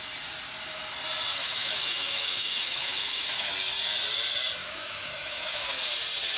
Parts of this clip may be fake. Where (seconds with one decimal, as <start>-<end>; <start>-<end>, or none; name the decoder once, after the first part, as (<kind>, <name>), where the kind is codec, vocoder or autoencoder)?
1.3-3.5 (autoencoder, DAC-VAE); 4.6-5.7